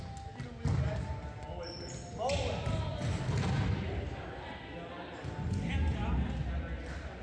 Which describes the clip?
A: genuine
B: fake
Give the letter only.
A